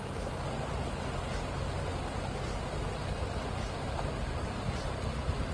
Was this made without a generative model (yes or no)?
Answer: yes